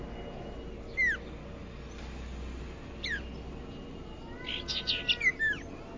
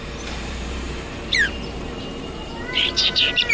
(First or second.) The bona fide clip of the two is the first